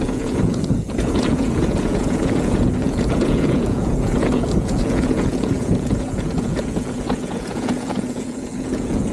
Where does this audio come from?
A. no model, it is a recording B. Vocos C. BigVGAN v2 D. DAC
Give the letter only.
B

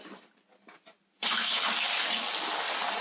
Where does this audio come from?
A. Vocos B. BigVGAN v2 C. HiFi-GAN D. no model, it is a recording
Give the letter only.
D